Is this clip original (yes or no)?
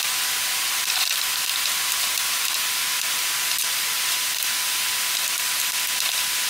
no